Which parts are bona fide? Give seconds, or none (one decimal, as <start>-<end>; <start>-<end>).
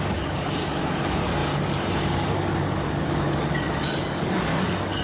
none